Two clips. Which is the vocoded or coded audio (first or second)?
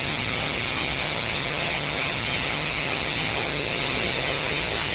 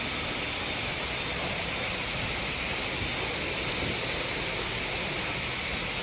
first